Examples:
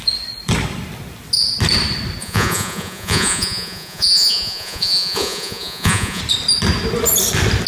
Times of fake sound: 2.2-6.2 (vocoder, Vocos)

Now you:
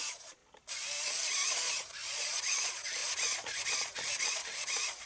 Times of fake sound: 0.0-0.4 (vocoder, Vocos); 1.3-5.1